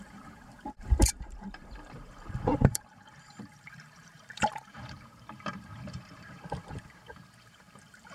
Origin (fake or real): fake